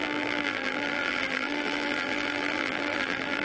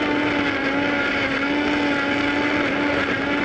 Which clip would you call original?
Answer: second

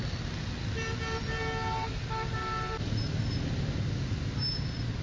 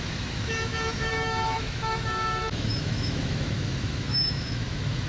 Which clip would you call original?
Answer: first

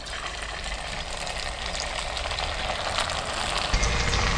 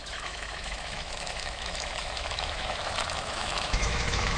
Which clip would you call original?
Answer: first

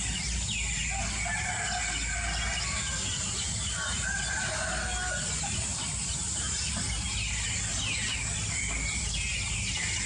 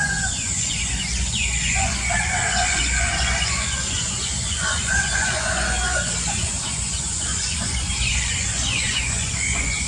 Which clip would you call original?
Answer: first